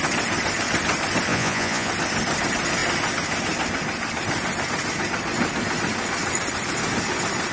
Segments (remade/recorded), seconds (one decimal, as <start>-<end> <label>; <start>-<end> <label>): 0.0-1.3 recorded; 1.3-1.9 remade; 1.9-7.5 recorded